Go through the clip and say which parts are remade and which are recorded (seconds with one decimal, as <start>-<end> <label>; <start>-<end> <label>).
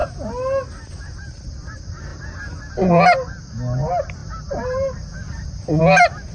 0.0-4.2 recorded; 4.2-5.8 remade; 5.8-6.3 recorded